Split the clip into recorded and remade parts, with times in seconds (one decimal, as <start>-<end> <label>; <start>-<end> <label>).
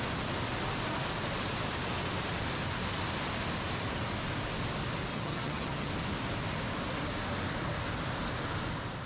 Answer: 0.0-5.1 recorded; 5.1-5.9 remade; 5.9-9.1 recorded